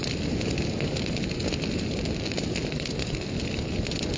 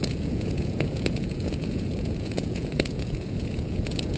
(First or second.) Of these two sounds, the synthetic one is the second